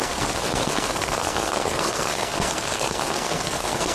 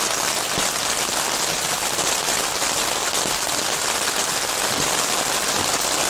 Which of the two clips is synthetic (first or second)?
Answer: first